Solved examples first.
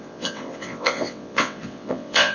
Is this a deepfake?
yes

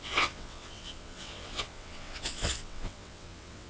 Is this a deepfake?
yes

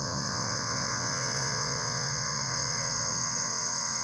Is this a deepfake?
yes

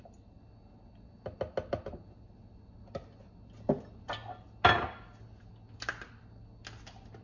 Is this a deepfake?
no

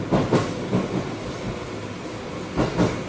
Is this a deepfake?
no